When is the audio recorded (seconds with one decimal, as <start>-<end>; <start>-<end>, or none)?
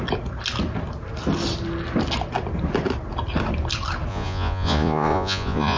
0.0-4.1